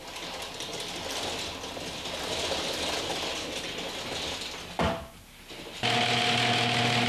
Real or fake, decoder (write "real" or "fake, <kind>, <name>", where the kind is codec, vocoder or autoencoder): real